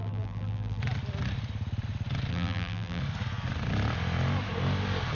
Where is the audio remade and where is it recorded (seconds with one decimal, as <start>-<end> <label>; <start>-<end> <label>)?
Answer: 0.0-0.8 remade; 0.8-2.3 recorded; 2.3-3.0 remade; 3.0-5.1 recorded